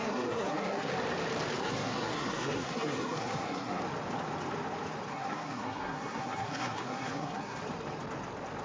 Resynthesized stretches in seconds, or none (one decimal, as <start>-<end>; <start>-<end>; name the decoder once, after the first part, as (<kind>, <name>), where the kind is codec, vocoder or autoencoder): 0.0-0.9 (codec, SNAC); 1.6-3.8; 5.1-7.6